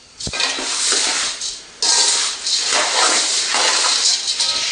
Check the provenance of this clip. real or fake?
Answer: real